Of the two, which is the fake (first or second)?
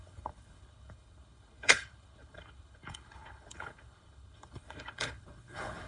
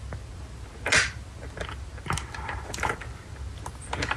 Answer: first